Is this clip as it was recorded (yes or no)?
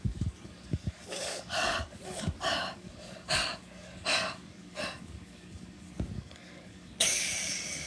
no